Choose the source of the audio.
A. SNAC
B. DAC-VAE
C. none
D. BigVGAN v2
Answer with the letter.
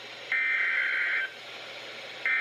C